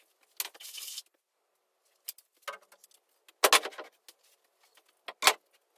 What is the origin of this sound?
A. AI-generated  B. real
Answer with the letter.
B